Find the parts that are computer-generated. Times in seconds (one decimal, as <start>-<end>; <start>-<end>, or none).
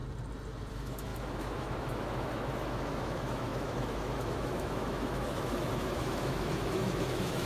0.7-7.5